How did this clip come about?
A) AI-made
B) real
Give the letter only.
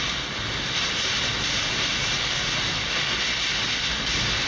B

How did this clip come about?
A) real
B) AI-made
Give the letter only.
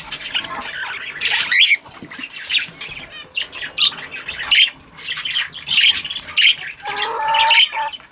A